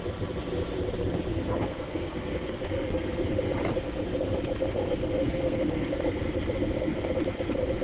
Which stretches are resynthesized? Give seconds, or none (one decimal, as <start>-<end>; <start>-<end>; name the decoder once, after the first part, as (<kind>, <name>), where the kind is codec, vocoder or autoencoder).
1.3-3.3 (codec, SNAC); 5.0-5.9